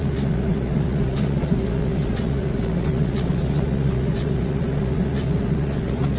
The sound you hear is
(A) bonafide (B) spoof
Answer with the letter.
B